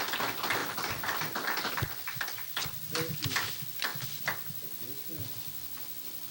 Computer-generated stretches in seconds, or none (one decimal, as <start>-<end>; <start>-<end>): 0.6-1.7